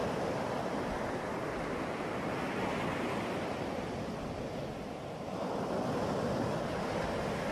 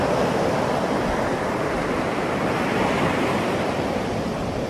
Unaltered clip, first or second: first